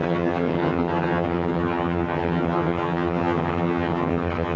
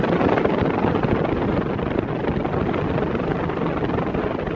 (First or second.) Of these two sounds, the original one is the second